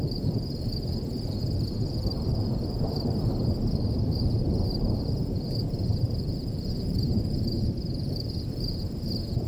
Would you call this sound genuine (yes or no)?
no